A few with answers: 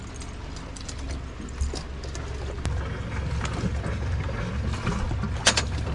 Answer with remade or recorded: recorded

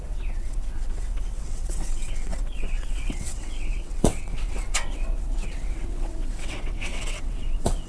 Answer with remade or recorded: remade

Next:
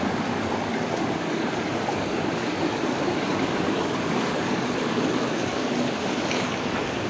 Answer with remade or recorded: remade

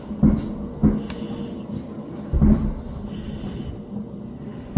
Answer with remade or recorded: recorded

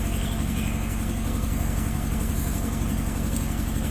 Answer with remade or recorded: remade